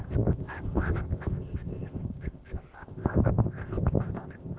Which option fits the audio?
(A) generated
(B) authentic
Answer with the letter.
A